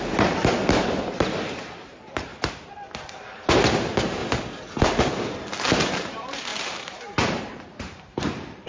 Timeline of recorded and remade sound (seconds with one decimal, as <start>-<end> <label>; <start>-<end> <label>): 0.0-2.3 remade; 2.3-3.1 recorded; 3.1-4.2 remade; 4.2-5.0 recorded; 5.0-8.7 remade